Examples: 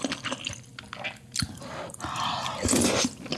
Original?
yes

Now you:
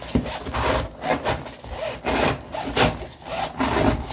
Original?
yes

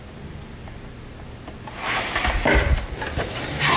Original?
yes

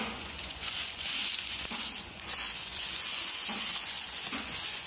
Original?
no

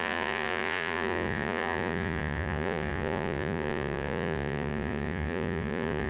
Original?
no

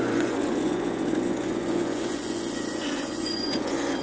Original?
no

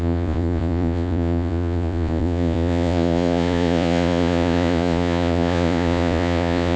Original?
no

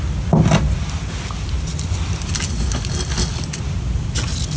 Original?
yes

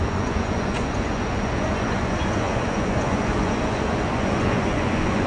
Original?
no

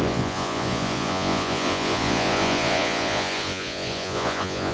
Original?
no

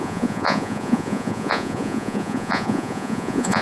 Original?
no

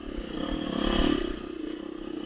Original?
yes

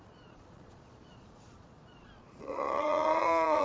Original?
no